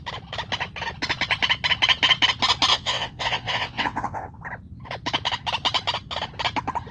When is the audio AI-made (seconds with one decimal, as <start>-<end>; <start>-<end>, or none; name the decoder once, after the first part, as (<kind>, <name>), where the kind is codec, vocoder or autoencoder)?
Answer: 2.7-4.3 (vocoder, WaveNeXt)